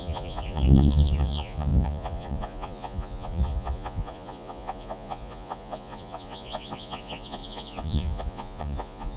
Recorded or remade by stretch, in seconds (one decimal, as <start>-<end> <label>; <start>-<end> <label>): 0.0-9.2 remade